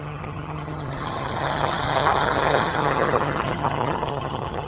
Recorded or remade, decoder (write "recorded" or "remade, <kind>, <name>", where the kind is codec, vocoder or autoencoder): remade, vocoder, HiFi-GAN